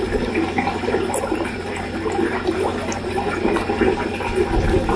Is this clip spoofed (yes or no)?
no